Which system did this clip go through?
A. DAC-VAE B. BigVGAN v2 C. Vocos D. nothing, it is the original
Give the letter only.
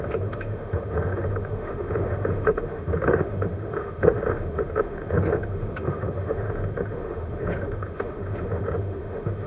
A